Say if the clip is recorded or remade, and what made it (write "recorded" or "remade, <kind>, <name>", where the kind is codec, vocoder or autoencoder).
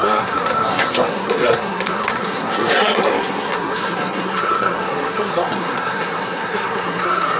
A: remade, codec, SNAC